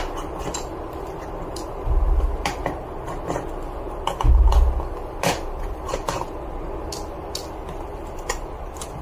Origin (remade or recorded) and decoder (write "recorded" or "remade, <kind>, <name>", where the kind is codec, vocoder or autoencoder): recorded